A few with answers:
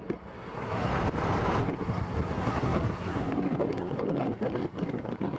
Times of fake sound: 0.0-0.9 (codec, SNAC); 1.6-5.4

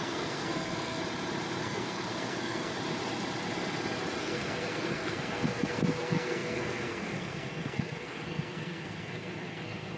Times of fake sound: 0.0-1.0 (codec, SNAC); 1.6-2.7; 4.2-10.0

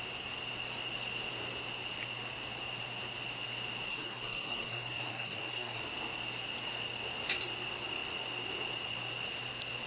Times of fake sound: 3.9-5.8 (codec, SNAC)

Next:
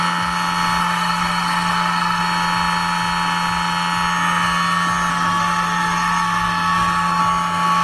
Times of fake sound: 0.8-2.2 (codec, SNAC); 5.1-7.2

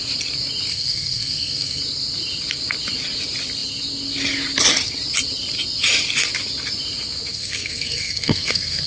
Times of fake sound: 0.7-1.8 (codec, SNAC); 7.3-8.9